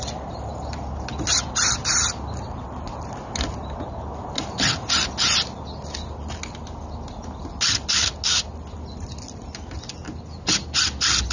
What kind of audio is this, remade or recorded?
recorded